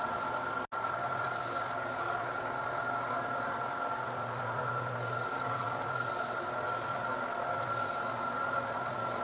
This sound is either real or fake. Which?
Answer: real